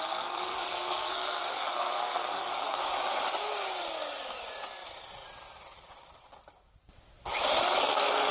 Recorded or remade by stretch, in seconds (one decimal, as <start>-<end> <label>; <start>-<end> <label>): 0.0-2.8 remade; 2.8-7.8 recorded; 7.8-8.3 remade

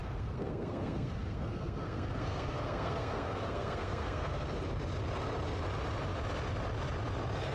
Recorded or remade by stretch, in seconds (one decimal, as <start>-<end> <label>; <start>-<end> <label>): 0.0-4.5 remade; 4.5-7.5 recorded

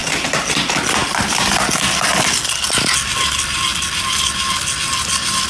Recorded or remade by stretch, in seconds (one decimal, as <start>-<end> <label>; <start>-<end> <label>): 0.0-5.5 recorded

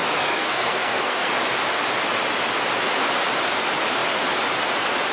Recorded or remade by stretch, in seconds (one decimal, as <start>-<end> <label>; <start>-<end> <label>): 0.0-1.3 remade; 1.3-5.1 recorded

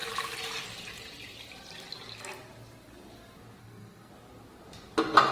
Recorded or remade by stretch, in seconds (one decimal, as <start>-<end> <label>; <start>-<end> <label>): 0.0-3.6 recorded; 3.6-4.1 remade; 4.1-5.3 recorded

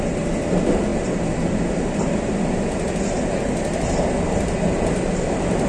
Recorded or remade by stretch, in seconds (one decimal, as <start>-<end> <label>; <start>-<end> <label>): 0.0-5.7 recorded